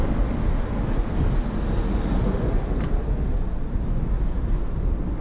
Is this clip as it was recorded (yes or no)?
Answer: yes